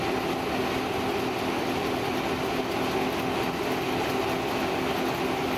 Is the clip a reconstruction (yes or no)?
no